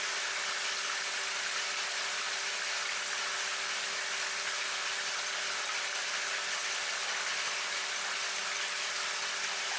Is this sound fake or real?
real